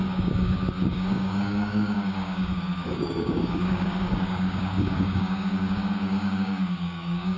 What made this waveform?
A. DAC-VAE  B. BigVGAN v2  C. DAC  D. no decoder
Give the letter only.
C